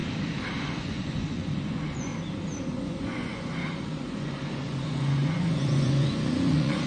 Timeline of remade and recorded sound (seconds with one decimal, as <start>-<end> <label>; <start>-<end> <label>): 0.0-0.6 recorded; 0.6-2.1 remade; 2.1-2.8 recorded; 2.8-6.9 remade